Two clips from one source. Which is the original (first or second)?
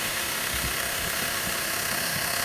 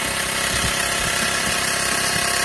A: second